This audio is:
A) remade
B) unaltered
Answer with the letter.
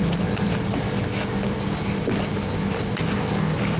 B